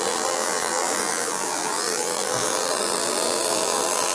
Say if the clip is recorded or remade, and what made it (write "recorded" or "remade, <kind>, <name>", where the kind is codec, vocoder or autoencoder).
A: remade, vocoder, BigVGAN v2